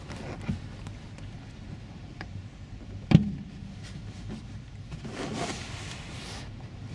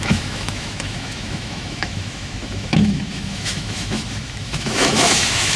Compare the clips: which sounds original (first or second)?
first